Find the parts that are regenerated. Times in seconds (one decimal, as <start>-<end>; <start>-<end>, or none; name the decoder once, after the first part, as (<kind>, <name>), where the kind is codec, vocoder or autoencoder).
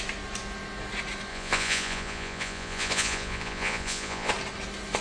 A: 1.3-4.3 (vocoder, Vocos)